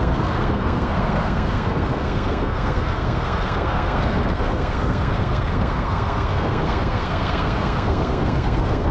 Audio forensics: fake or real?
fake